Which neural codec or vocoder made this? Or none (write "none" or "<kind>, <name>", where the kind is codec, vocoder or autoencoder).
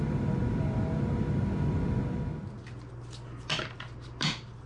none